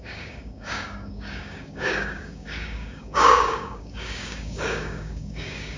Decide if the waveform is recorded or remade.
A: remade